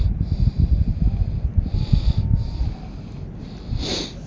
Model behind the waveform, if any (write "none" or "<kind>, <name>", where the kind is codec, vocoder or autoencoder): none